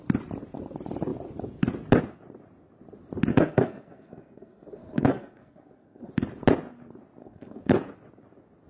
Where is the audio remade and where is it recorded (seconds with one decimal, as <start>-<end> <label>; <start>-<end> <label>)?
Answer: 0.0-3.3 recorded; 3.3-6.1 remade; 6.1-7.2 recorded; 7.2-7.7 remade; 7.7-8.7 recorded